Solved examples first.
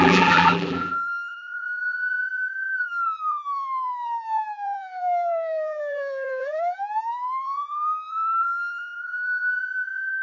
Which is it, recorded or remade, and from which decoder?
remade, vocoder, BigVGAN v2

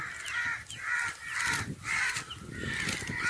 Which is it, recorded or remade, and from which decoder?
remade, vocoder, BigVGAN v2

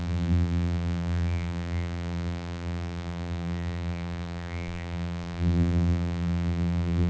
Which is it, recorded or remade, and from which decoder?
remade, vocoder, BigVGAN v2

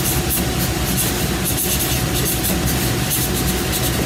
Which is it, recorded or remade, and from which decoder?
recorded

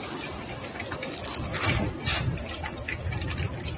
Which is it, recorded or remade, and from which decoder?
recorded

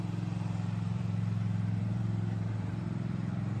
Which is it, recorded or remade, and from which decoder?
remade, vocoder, BigVGAN v2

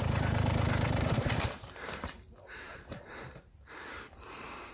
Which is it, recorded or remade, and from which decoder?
remade, vocoder, BigVGAN v2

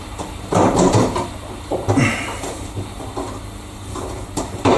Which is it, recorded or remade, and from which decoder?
remade, vocoder, BigVGAN v2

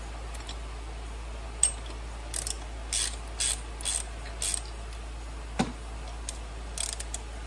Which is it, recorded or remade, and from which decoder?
recorded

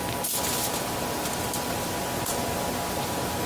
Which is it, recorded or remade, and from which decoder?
recorded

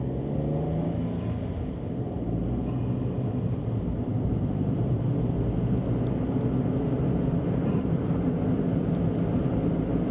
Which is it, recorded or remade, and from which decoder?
recorded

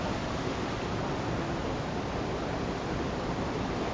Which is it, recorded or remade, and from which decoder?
recorded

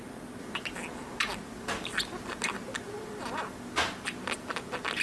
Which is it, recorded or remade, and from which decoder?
recorded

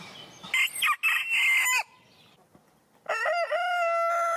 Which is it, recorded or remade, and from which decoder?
recorded